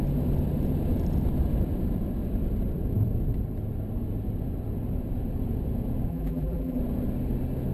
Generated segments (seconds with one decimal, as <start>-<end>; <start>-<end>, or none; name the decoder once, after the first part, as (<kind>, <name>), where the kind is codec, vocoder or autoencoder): 6.1-6.8 (vocoder, BigVGAN v2)